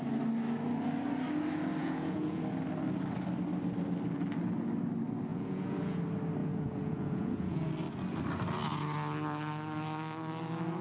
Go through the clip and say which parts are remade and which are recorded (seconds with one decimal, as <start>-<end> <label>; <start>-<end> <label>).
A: 0.0-1.8 recorded; 1.8-2.4 remade; 2.4-5.3 recorded; 5.3-6.0 remade; 6.0-6.4 recorded; 6.4-7.7 remade; 7.7-10.8 recorded